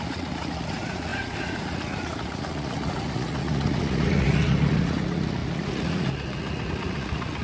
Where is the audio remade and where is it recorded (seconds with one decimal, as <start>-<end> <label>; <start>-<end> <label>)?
0.0-7.4 remade